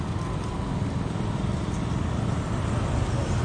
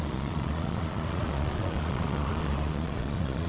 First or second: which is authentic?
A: first